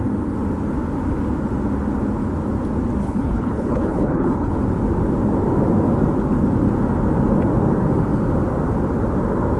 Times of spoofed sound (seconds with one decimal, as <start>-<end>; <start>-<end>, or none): 3.0-4.5

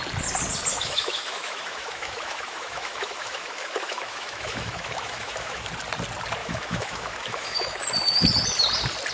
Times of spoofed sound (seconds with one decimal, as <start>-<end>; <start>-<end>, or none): 0.7-5.7; 6.4-7.8

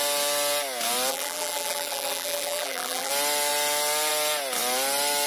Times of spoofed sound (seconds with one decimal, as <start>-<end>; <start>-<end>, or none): 1.1-3.1

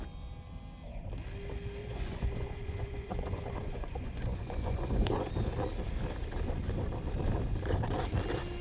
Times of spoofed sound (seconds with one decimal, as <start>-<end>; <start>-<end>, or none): 1.8-5.3